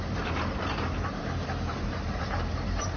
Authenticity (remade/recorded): remade